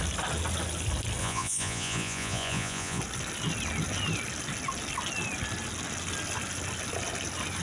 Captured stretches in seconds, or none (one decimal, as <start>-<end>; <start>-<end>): 0.0-1.2; 3.0-7.6